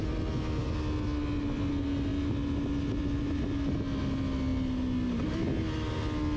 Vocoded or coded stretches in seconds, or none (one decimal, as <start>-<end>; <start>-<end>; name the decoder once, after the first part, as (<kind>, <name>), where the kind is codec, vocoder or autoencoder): none